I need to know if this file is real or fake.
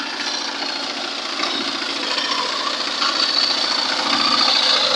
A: real